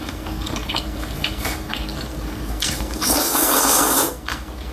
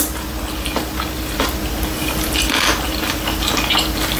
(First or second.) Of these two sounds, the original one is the second